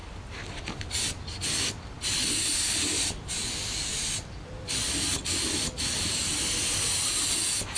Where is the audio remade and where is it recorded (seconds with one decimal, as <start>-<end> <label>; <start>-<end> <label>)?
0.0-7.8 recorded